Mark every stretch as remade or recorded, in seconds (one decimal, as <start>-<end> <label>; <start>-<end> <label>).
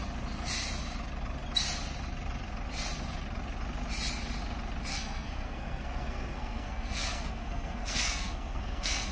0.0-4.9 recorded; 4.9-9.1 remade